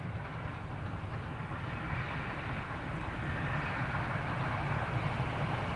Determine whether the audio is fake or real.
real